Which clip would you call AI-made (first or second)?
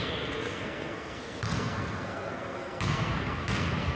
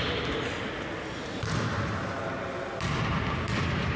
first